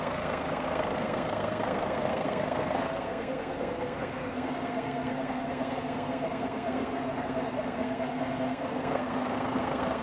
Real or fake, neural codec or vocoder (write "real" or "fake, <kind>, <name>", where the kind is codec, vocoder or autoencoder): fake, codec, SNAC